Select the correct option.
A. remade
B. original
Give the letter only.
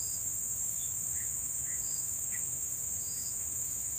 A